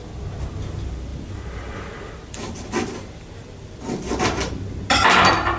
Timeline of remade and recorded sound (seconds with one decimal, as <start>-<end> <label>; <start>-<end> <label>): 0.0-1.1 recorded; 1.1-4.5 remade; 4.5-5.6 recorded

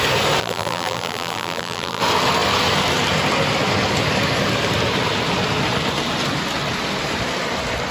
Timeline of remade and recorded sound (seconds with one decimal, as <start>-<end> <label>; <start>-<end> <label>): 0.0-0.4 recorded; 0.4-2.0 remade; 2.0-7.9 recorded